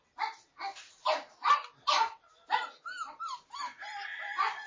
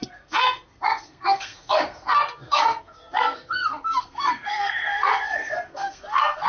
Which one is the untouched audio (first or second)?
first